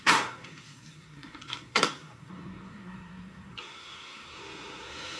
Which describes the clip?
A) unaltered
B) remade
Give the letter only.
B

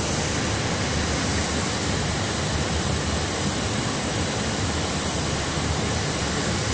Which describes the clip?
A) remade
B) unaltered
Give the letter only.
B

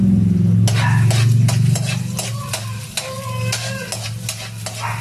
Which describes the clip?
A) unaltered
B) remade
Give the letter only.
A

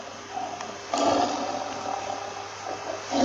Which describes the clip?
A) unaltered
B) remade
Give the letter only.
A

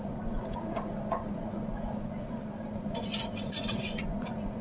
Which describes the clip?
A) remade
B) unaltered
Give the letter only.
A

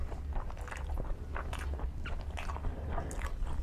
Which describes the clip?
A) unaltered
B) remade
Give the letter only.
A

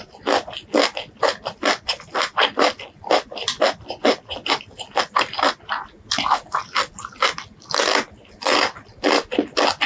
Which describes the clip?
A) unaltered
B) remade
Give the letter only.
A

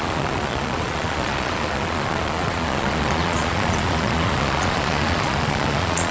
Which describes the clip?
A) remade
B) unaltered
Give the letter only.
A